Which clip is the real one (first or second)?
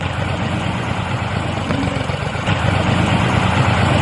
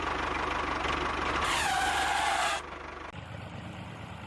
second